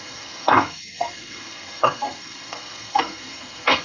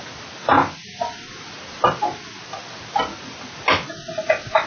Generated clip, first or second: first